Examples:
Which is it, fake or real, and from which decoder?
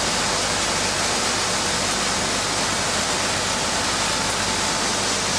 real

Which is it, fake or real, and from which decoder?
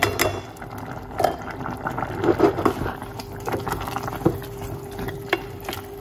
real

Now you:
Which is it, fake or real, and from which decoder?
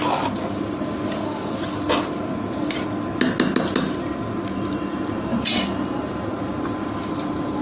real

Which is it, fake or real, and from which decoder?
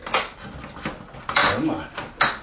real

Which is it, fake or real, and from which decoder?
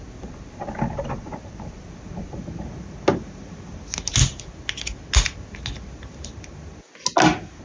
real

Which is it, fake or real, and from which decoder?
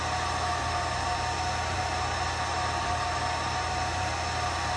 real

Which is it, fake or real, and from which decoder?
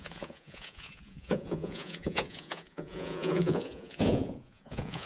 fake, vocoder, Vocos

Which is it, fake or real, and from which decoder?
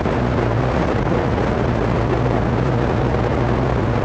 fake, vocoder, Vocos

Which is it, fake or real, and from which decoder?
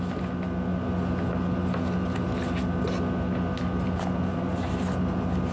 real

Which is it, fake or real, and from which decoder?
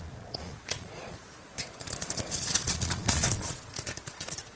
fake, vocoder, Vocos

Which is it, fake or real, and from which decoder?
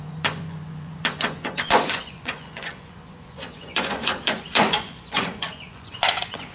fake, vocoder, Vocos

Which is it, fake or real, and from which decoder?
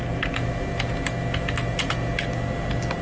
real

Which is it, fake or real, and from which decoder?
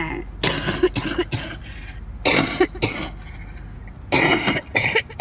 real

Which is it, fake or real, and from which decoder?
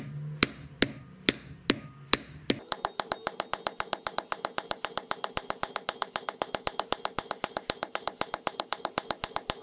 real